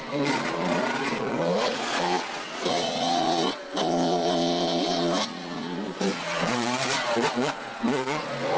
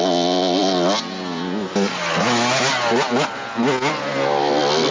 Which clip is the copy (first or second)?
first